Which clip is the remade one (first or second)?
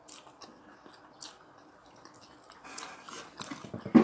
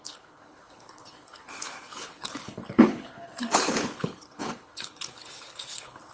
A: second